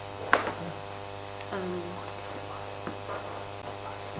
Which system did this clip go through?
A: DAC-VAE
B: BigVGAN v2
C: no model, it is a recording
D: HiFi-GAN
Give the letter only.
C